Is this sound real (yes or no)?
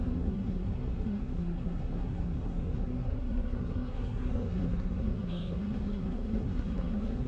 no